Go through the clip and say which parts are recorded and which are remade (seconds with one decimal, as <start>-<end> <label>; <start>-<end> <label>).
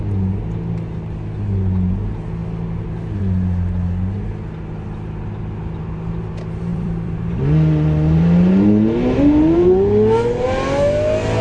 0.0-6.7 recorded; 6.7-7.4 remade; 7.4-11.4 recorded